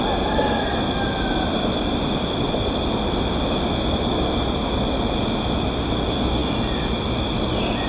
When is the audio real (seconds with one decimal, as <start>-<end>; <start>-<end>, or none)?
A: 0.0-7.9